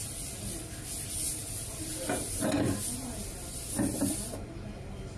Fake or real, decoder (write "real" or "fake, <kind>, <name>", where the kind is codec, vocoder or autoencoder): real